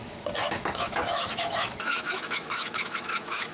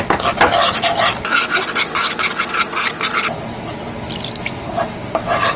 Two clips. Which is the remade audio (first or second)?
first